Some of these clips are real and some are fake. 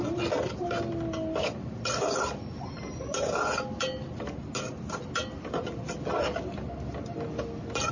real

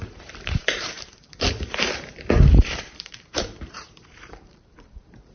fake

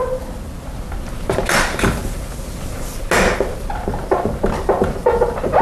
real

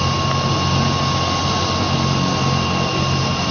real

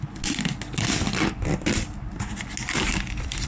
real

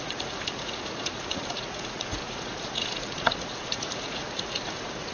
fake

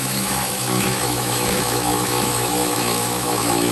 fake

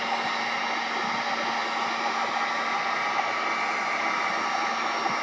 real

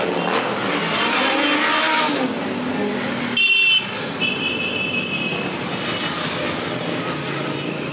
real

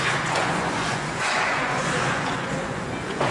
fake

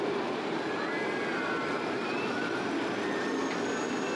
real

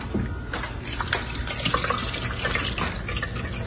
real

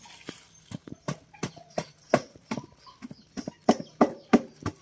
real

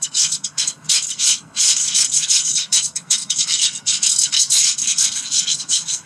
fake